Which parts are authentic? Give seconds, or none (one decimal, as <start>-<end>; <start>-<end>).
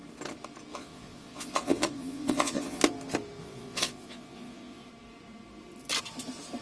0.0-0.7; 2.8-3.4; 4.9-6.6